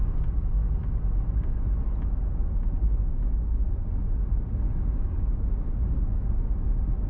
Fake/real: real